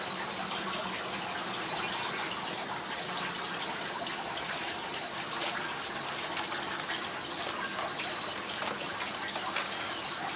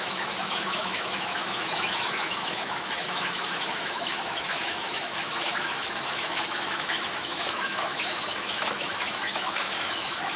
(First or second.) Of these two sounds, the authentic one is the first